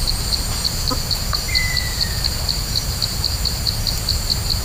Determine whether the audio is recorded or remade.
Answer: remade